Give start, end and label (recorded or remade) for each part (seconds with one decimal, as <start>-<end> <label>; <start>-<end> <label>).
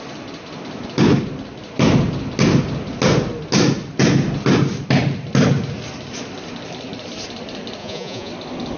0.0-7.8 recorded; 7.8-8.3 remade; 8.3-8.8 recorded